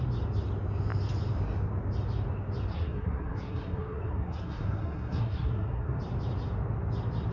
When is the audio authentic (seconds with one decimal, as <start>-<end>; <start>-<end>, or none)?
0.0-2.7; 6.0-7.3